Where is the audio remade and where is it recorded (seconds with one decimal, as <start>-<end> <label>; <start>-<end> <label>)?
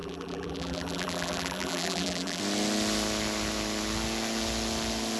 0.0-2.4 remade; 2.4-5.2 recorded